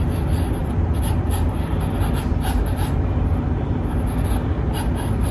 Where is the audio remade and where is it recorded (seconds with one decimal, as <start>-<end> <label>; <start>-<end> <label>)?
0.0-5.3 recorded